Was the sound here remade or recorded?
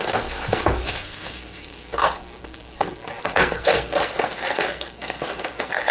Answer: remade